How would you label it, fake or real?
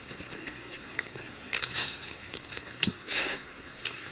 fake